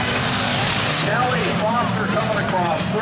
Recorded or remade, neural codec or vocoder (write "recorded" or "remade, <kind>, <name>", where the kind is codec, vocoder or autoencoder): remade, vocoder, BigVGAN v2